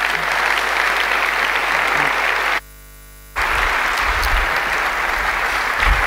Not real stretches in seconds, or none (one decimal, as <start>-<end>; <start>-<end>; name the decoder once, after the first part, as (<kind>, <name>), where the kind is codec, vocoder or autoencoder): none